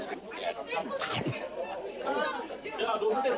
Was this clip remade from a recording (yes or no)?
no